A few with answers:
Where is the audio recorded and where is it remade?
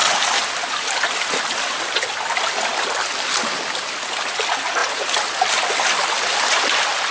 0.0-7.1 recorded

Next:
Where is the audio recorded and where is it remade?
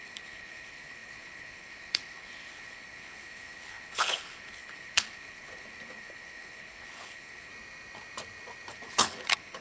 0.0-7.5 remade; 7.5-8.7 recorded; 8.7-9.6 remade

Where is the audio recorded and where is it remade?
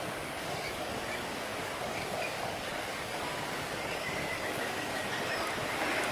0.0-5.0 remade; 5.0-6.1 recorded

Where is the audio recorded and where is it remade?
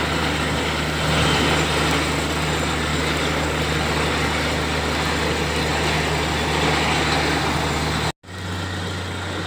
0.0-2.9 recorded; 2.9-3.6 remade; 3.6-9.5 recorded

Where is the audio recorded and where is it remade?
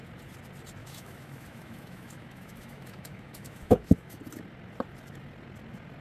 0.0-0.8 recorded; 0.8-4.2 remade; 4.2-6.0 recorded